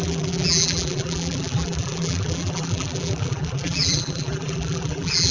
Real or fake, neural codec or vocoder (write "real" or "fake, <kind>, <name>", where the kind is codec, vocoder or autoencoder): fake, vocoder, BigVGAN v2